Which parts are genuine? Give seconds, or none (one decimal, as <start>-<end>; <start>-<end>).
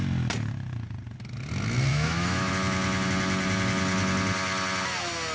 0.0-1.9; 2.5-5.3